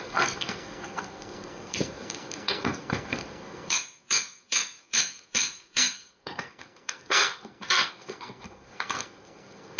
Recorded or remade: remade